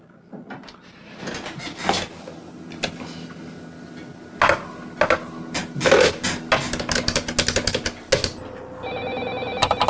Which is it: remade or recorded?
recorded